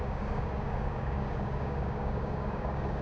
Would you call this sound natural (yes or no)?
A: no